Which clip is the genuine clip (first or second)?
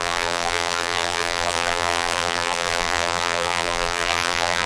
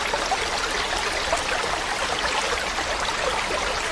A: second